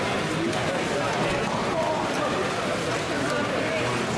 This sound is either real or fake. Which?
real